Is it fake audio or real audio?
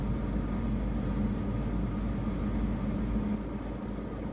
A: real